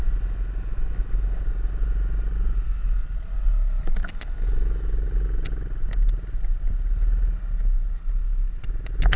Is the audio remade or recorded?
recorded